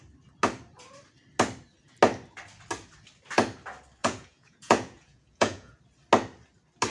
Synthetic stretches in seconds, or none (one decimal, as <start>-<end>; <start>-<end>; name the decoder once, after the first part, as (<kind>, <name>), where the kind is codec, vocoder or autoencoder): 4.0-5.8 (vocoder, Vocos)